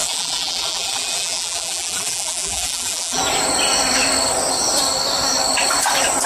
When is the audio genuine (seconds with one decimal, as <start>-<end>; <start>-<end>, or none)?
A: 3.2-6.3